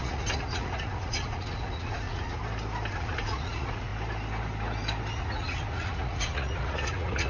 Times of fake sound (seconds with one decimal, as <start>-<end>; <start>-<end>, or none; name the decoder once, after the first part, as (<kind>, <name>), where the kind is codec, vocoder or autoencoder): 0.0-2.4 (vocoder, Vocos); 2.9-3.9; 5.1-7.3